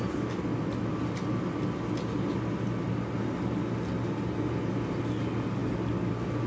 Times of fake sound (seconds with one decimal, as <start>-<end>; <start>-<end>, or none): none